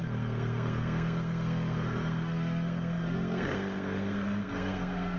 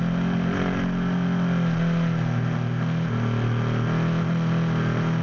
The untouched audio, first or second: second